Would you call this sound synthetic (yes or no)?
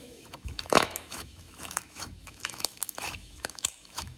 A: yes